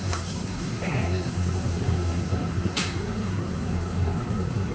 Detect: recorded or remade remade